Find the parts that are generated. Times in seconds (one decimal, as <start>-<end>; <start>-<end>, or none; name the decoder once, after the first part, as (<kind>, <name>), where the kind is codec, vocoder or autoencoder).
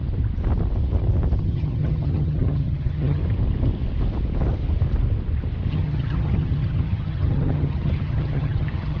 1.4-3.2 (vocoder, HiFi-GAN); 5.7-9.0